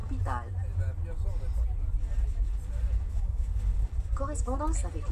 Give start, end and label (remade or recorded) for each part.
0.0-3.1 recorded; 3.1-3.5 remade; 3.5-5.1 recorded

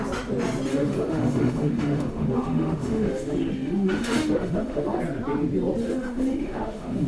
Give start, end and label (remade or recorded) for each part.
0.0-0.7 recorded; 0.7-5.0 remade; 5.0-5.8 recorded; 5.8-7.1 remade

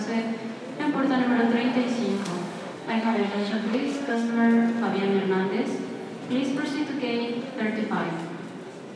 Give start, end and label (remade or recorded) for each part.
0.0-2.1 recorded; 2.1-4.3 remade; 4.3-9.0 recorded

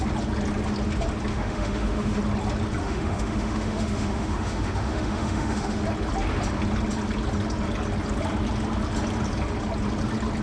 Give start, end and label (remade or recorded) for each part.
0.0-1.3 recorded; 1.3-2.2 remade; 2.2-2.8 recorded; 2.8-5.8 remade; 5.8-10.4 recorded

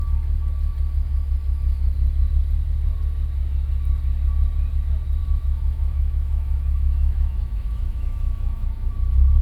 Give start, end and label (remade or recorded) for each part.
0.0-5.2 recorded; 5.2-8.9 remade; 8.9-9.4 recorded

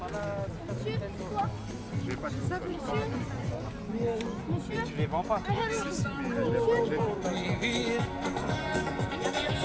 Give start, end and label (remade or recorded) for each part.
0.0-9.6 recorded

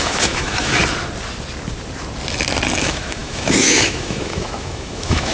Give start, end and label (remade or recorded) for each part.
0.0-0.8 remade; 0.8-2.8 recorded; 2.8-5.3 remade